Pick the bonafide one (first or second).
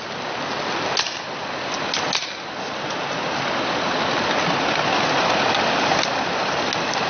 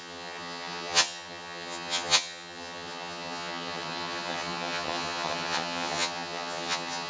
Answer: first